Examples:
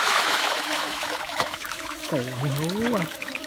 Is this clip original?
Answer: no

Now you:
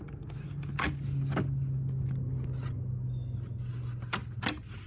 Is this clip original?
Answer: yes